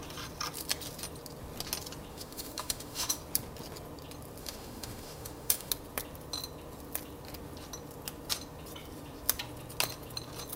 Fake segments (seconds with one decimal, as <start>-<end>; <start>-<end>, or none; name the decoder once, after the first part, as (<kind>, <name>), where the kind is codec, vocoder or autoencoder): 2.1-3.2 (autoencoder, DAC-VAE); 4.4-5.7